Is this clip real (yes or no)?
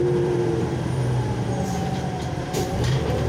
no